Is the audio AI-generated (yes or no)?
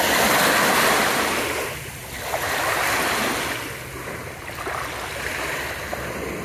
no